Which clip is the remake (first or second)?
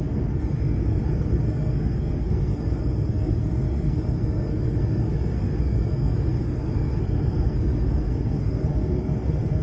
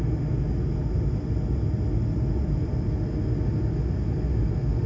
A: first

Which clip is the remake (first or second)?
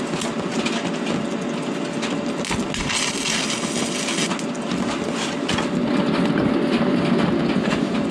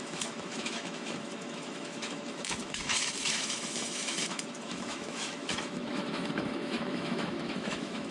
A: second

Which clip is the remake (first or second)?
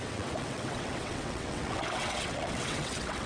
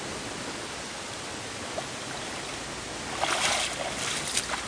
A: first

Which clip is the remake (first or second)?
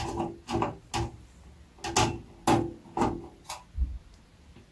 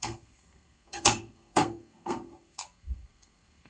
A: second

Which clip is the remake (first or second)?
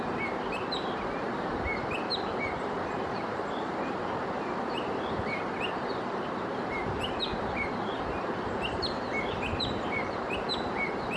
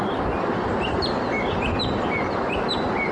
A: first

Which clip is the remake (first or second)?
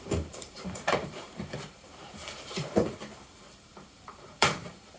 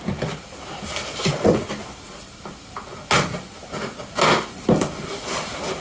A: first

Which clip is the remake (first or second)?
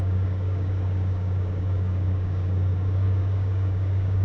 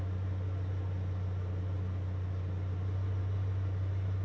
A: first